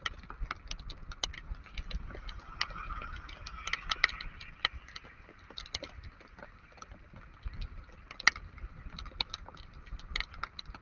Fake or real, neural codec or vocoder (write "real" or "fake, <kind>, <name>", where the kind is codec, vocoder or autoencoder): real